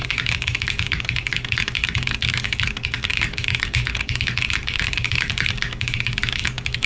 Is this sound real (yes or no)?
no